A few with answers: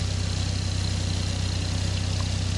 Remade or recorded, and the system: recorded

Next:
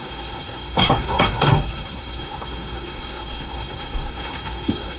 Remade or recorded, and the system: remade, codec, SNAC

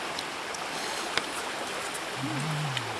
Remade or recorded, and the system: recorded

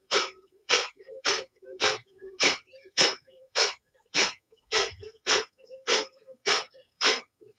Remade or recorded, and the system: remade, codec, SNAC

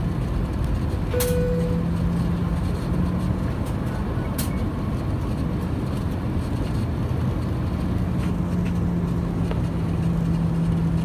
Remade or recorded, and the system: recorded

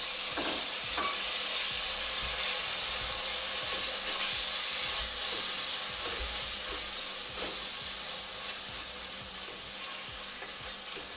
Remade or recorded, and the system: recorded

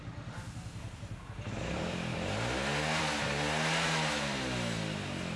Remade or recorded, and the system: recorded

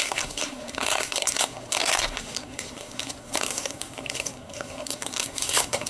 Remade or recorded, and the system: remade, codec, SNAC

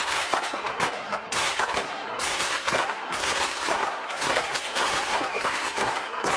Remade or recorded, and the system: remade, codec, SNAC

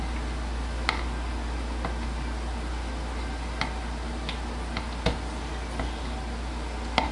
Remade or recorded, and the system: recorded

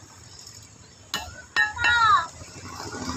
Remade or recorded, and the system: recorded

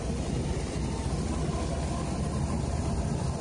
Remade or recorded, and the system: recorded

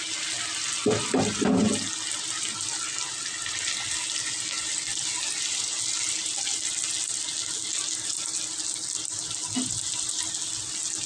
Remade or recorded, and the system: recorded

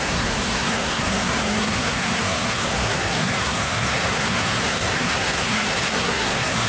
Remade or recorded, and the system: remade, codec, SNAC